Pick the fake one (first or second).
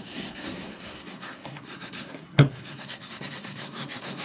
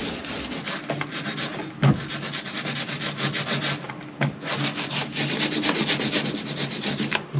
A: first